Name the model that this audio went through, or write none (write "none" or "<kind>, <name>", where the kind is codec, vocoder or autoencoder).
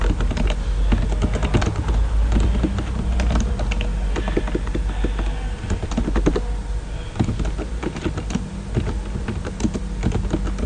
none